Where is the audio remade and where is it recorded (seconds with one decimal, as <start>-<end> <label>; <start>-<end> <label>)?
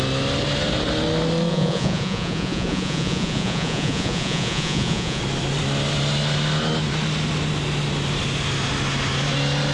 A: 0.0-1.5 recorded; 1.5-5.2 remade; 5.2-9.7 recorded